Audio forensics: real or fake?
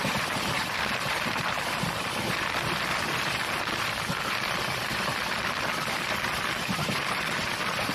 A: fake